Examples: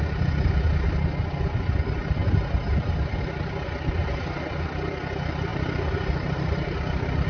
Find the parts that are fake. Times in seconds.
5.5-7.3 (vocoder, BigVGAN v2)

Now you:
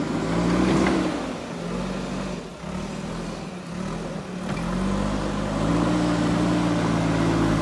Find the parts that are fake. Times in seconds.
none